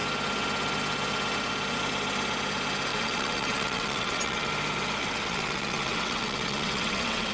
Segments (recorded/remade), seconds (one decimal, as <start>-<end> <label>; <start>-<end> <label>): 0.0-2.9 recorded; 2.9-4.5 remade; 4.5-5.0 recorded; 5.0-7.3 remade